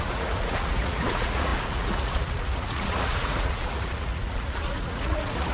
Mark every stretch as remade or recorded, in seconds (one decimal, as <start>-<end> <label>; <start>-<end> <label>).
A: 0.0-5.5 remade